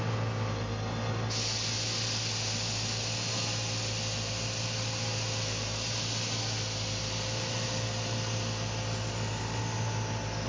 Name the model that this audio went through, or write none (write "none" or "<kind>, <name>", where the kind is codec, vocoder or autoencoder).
none